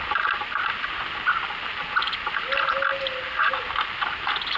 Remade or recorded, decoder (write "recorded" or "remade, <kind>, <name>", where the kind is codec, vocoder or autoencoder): recorded